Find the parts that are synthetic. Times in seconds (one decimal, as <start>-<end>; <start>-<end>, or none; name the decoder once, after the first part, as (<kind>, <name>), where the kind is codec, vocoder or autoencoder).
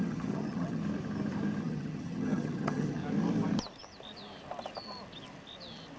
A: 0.0-0.8 (vocoder, HiFi-GAN); 1.6-3.0